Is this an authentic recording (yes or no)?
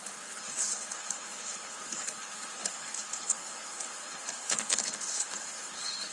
no